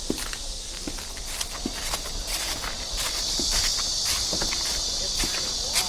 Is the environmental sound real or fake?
real